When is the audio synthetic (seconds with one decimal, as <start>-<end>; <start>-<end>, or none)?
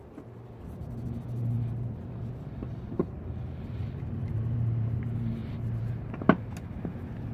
3.0-4.1; 5.4-5.9